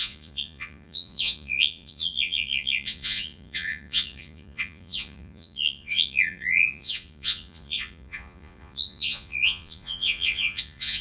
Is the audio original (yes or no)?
no